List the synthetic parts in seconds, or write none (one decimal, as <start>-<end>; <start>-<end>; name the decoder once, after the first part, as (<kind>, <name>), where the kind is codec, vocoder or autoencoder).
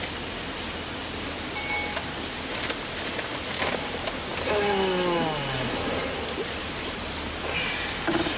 none